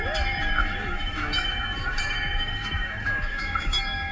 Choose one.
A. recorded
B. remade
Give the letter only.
B